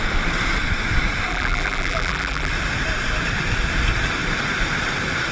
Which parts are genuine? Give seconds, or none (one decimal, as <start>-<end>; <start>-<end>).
0.0-1.3; 2.5-5.3